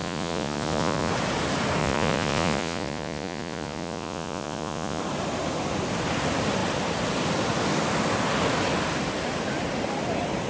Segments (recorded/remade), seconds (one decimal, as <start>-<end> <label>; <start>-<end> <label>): 0.0-1.1 remade; 1.1-1.8 recorded; 1.8-5.0 remade; 5.0-10.5 recorded